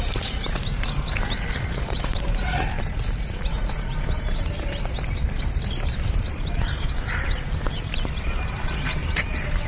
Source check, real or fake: fake